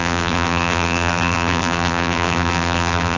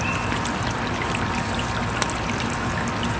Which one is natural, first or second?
second